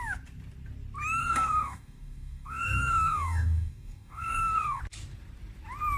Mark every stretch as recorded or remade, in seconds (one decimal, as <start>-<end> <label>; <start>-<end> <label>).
0.0-1.2 recorded; 1.2-4.8 remade; 4.8-6.0 recorded